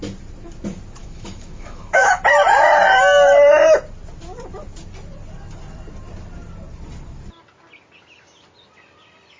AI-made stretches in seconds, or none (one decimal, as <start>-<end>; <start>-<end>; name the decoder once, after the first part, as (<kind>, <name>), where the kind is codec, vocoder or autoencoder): 1.0-2.2 (autoencoder, DAC-VAE)